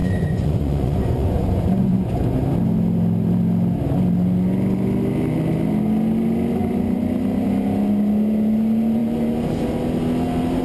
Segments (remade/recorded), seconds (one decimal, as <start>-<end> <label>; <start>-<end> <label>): 0.0-2.4 remade; 2.4-10.6 recorded